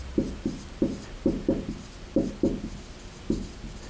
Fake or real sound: real